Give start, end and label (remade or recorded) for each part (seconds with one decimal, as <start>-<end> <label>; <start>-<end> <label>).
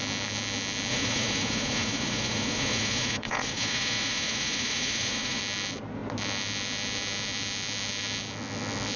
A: 0.0-0.9 recorded; 0.9-5.4 remade; 5.4-9.0 recorded